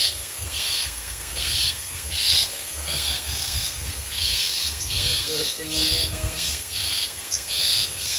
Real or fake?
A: fake